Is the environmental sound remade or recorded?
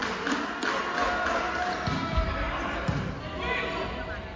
recorded